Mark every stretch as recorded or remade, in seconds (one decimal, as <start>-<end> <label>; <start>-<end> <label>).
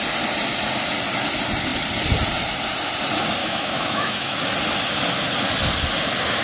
0.0-3.4 recorded; 3.4-4.4 remade; 4.4-6.4 recorded